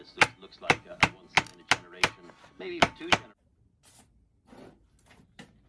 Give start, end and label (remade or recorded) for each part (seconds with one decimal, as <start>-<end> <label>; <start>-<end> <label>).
0.0-5.7 recorded